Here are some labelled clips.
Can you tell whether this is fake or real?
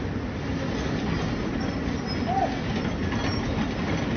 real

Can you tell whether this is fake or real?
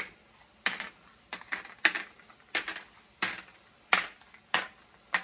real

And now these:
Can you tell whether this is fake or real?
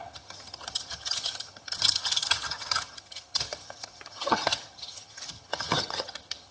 fake